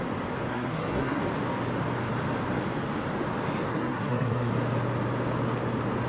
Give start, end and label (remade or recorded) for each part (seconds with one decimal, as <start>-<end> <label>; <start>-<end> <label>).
0.0-0.5 recorded; 0.5-1.2 remade; 1.2-3.7 recorded; 3.7-4.5 remade; 4.5-6.1 recorded